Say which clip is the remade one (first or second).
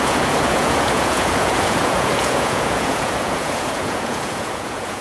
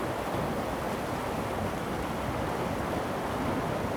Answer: first